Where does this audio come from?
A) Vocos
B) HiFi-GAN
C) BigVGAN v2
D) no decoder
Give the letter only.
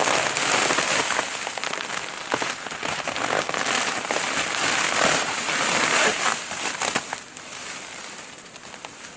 D